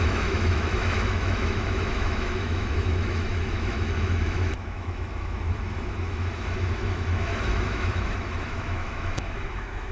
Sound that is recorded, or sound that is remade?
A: remade